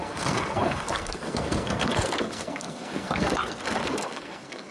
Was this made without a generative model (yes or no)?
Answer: no